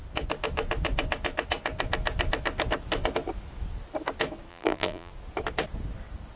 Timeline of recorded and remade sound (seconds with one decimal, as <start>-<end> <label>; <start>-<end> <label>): 0.0-4.5 recorded; 4.5-5.1 remade; 5.1-6.4 recorded